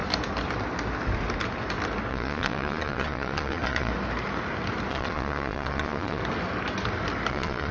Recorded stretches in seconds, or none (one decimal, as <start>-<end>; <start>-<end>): 0.0-2.1; 3.9-4.9; 6.2-7.3